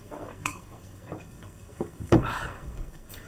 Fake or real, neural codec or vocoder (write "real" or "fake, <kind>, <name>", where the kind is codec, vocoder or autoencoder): fake, codec, SNAC